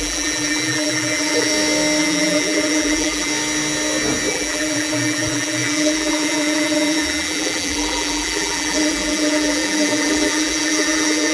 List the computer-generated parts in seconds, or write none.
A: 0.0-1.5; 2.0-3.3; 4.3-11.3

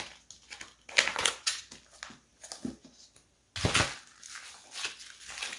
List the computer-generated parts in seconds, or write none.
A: 1.1-1.6

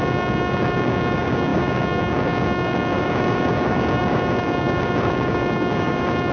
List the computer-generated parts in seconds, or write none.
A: 0.0-6.3

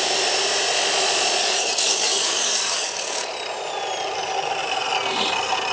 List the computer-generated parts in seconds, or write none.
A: 1.4-3.3

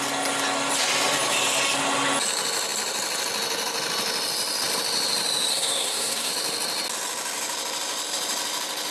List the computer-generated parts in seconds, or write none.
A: 5.5-6.3

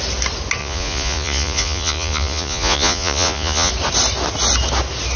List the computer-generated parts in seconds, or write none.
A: 0.6-3.7

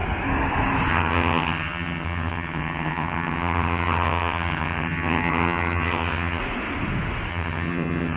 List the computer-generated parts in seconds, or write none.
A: 0.9-6.4; 7.3-8.2

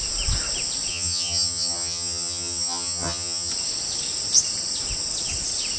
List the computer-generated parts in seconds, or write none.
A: 0.9-3.5